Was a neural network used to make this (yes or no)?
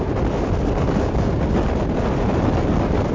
no